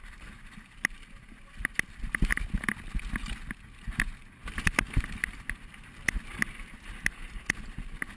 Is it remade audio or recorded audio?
recorded